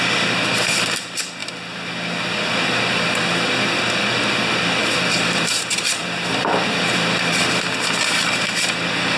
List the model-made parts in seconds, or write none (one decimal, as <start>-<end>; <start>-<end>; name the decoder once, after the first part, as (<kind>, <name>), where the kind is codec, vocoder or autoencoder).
4.8-7.4 (vocoder, BigVGAN v2)